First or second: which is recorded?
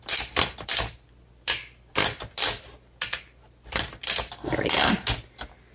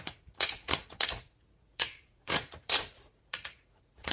first